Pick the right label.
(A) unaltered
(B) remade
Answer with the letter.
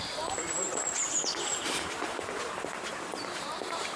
B